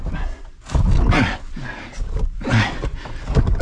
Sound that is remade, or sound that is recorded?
recorded